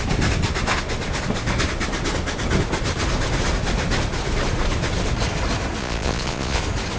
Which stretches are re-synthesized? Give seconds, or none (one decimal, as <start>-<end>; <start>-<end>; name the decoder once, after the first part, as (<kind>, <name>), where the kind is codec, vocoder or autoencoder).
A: 5.8-6.6 (vocoder, Vocos)